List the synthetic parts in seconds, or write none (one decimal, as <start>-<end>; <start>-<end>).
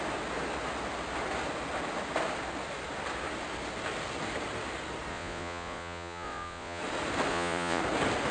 5.1-6.8; 7.3-7.8